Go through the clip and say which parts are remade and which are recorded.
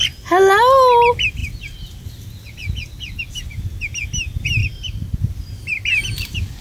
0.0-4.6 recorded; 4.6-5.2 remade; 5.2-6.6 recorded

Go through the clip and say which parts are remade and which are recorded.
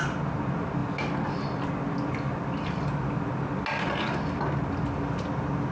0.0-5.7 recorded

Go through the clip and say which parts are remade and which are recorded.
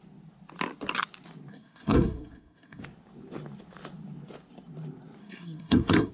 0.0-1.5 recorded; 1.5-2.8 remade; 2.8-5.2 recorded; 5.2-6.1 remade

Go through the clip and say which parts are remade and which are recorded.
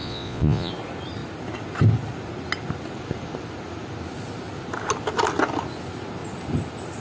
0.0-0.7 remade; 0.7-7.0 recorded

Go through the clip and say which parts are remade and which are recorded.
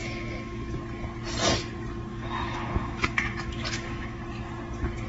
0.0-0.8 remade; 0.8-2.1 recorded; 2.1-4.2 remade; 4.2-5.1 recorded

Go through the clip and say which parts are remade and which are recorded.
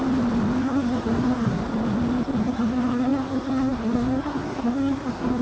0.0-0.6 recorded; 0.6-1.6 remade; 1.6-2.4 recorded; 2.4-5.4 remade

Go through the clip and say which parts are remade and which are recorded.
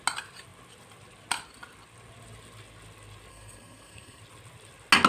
0.0-3.3 recorded; 3.3-4.2 remade; 4.2-5.1 recorded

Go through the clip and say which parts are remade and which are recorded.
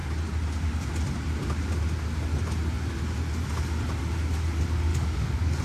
0.0-4.9 recorded; 4.9-5.6 remade